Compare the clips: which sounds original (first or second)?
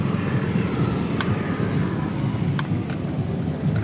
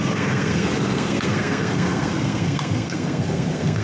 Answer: first